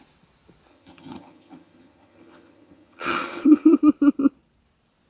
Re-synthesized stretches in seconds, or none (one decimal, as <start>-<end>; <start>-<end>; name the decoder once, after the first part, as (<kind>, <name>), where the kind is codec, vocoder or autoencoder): 0.7-3.8 (vocoder, HiFi-GAN)

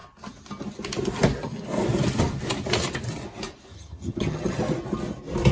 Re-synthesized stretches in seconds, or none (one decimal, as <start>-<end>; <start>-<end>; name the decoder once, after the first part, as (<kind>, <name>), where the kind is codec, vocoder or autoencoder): 3.7-4.6 (vocoder, HiFi-GAN)

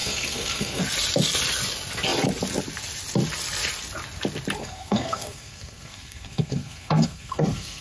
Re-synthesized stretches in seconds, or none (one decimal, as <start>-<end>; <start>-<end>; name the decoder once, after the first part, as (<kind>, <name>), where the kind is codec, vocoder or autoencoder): 0.0-0.8 (codec, SNAC); 4.6-7.8